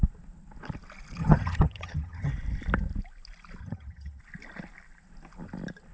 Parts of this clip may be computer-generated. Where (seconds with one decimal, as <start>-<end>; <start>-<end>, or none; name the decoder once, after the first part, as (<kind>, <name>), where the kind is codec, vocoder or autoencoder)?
1.2-2.3 (vocoder, HiFi-GAN); 3.6-4.2